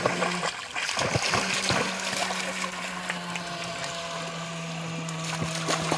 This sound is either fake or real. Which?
real